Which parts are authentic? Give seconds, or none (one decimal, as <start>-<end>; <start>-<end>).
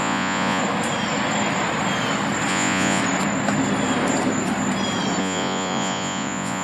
0.6-2.5; 3.0-5.2